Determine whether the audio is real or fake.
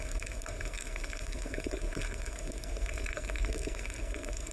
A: fake